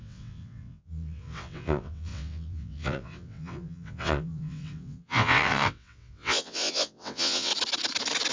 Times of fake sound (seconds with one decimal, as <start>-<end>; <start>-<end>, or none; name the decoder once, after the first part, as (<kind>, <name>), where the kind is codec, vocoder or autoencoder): 0.0-7.5 (vocoder, WaveNeXt)